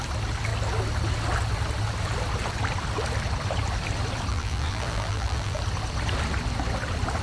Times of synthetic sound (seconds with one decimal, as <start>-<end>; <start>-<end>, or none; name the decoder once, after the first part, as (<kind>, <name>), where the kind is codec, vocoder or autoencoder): 4.3-5.6 (vocoder, BigVGAN v2)